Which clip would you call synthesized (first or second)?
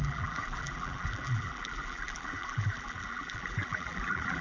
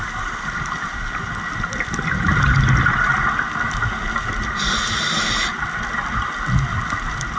first